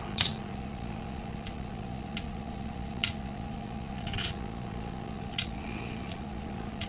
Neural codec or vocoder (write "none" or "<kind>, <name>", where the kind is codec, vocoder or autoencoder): vocoder, Vocos